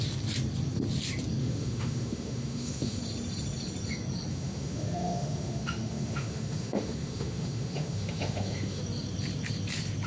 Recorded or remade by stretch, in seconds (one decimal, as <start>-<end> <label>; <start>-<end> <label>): 0.0-1.4 recorded; 1.4-3.0 remade; 3.0-4.3 recorded; 4.3-8.8 remade; 8.8-10.1 recorded